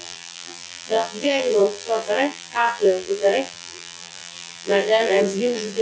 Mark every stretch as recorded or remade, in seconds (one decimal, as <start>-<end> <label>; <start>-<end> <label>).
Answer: 0.0-5.8 remade